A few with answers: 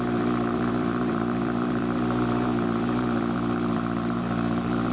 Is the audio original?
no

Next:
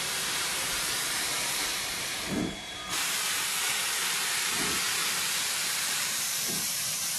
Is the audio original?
no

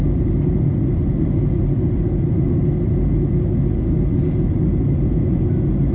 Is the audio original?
yes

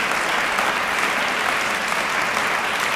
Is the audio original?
yes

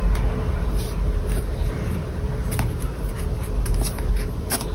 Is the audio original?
no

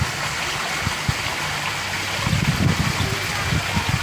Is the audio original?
yes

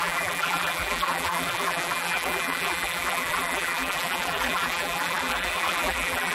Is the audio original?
no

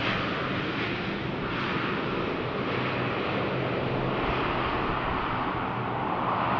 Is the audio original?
yes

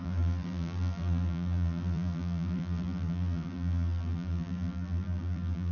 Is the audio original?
no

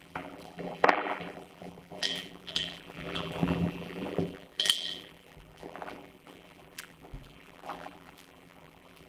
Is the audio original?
no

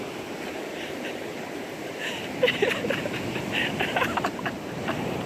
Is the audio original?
no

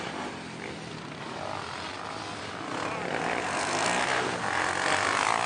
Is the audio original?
yes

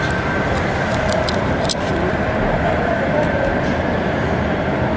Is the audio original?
no